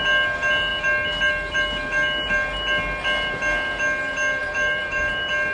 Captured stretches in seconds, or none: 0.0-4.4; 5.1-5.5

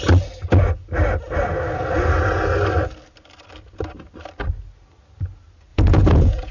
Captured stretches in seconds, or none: 0.0-5.7

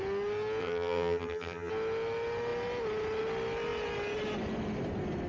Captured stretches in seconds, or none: 0.0-0.6; 1.7-5.3